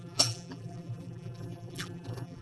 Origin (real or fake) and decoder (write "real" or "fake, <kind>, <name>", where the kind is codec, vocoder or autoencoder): fake, vocoder, BigVGAN v2